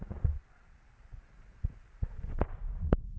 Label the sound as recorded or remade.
remade